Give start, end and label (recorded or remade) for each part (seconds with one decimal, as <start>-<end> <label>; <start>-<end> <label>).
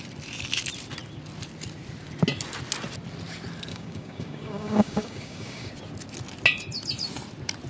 0.0-3.7 recorded; 3.7-5.7 remade; 5.7-7.7 recorded